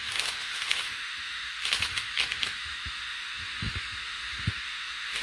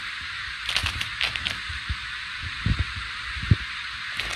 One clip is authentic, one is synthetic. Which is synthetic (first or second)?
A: first